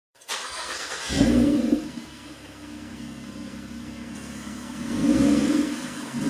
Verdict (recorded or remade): remade